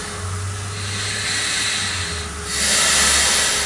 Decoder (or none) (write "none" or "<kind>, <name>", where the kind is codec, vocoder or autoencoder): none